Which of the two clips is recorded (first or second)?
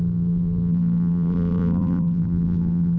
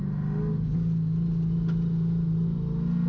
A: second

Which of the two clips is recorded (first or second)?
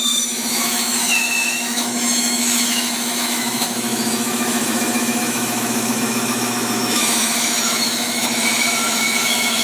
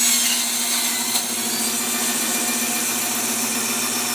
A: second